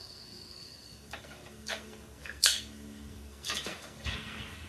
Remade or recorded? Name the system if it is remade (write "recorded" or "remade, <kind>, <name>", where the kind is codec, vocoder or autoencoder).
remade, codec, SNAC